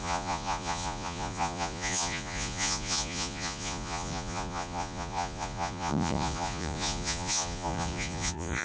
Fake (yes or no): yes